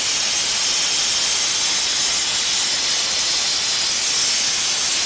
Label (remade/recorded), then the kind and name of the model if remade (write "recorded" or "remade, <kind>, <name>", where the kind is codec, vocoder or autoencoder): recorded